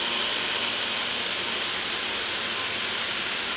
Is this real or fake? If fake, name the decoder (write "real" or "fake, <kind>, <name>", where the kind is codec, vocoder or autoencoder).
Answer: real